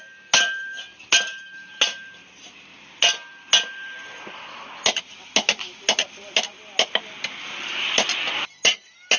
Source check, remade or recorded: recorded